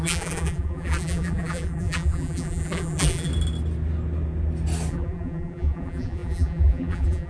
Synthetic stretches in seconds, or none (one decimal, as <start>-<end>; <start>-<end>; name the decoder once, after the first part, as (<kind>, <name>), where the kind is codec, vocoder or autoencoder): 0.0-3.3 (vocoder, BigVGAN v2); 4.9-7.3